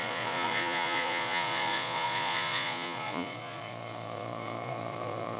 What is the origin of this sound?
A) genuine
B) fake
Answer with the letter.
B